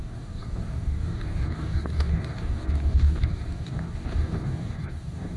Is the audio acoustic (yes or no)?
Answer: no